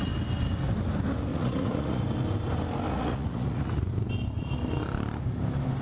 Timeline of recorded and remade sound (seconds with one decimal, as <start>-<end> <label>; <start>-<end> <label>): 0.0-1.3 recorded; 1.3-2.0 remade; 2.0-2.9 recorded; 2.9-3.9 remade; 3.9-5.8 recorded